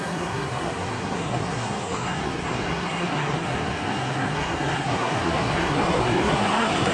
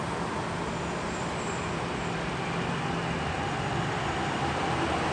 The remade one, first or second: first